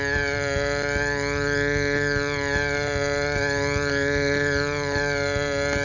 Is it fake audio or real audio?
real